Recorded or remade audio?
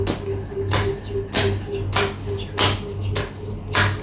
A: recorded